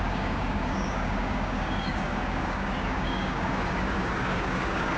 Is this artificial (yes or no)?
yes